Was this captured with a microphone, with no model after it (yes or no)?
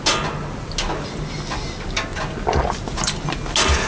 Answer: yes